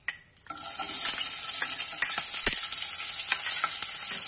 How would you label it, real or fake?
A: real